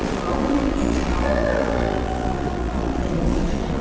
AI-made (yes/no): yes